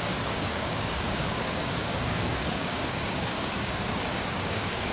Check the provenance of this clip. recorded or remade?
remade